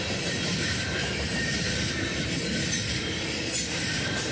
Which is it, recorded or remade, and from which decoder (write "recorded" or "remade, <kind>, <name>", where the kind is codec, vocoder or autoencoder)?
remade, vocoder, BigVGAN v2